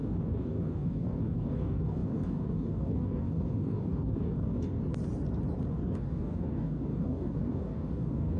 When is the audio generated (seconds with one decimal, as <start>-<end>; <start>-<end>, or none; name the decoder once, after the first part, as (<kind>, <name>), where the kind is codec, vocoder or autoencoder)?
0.0-4.8 (codec, DAC); 5.7-8.4